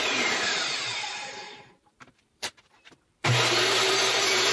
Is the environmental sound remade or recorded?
remade